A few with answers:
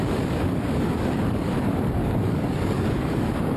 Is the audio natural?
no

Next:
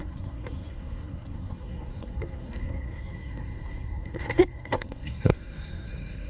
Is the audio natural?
no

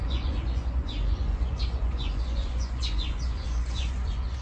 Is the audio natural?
no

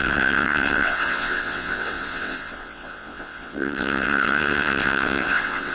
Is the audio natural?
no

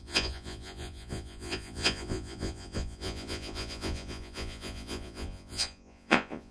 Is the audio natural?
no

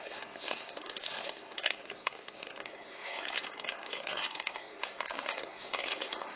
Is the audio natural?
no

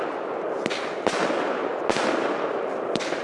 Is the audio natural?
yes